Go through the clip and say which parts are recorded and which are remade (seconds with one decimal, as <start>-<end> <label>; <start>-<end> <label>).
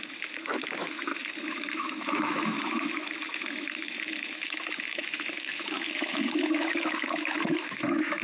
0.0-8.2 remade